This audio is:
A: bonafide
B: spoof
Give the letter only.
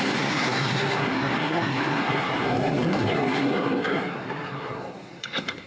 B